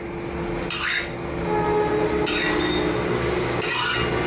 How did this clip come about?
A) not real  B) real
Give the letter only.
B